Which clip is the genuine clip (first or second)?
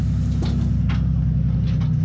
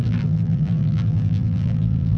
first